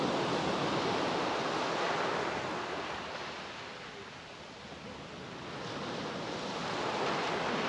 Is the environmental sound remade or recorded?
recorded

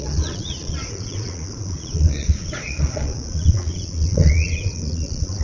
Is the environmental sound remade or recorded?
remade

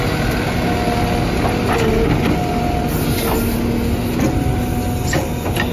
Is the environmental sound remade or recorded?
recorded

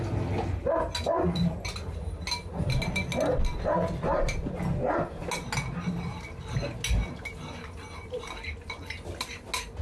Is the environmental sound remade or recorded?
recorded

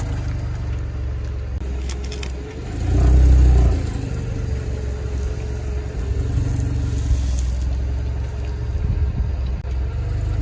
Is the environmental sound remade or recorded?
recorded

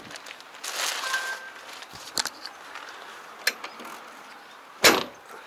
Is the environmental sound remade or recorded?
recorded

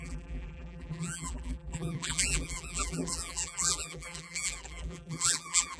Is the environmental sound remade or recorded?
remade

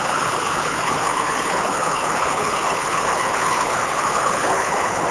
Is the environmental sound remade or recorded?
remade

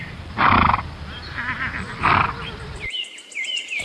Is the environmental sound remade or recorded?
recorded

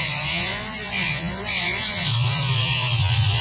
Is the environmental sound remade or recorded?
remade